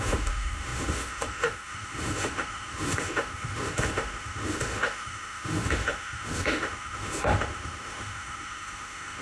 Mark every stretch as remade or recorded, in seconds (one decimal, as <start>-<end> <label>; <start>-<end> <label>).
0.0-9.2 remade